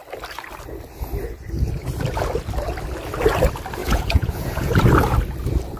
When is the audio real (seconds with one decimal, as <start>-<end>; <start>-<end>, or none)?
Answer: 0.0-3.8; 4.7-5.8